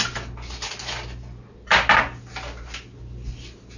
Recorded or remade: recorded